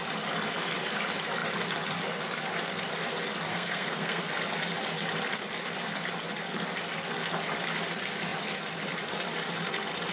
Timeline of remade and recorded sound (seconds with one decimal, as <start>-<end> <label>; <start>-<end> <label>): 0.0-3.5 recorded; 3.5-4.2 remade; 4.2-10.1 recorded